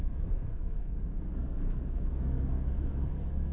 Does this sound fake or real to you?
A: fake